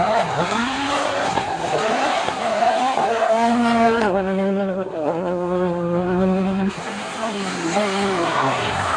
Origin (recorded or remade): remade